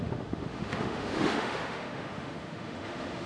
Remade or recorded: remade